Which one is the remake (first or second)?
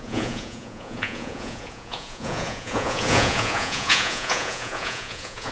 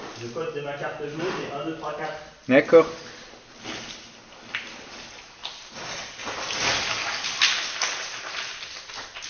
first